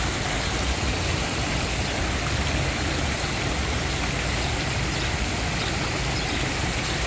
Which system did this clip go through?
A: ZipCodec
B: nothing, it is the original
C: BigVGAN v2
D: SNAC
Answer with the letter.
B